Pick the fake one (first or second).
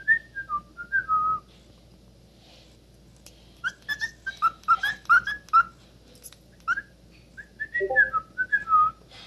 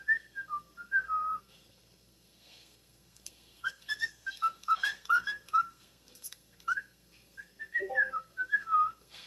second